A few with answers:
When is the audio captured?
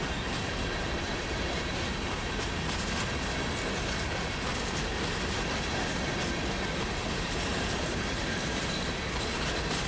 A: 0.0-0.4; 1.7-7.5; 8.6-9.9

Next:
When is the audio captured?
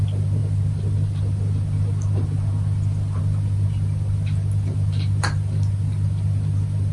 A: 0.0-6.9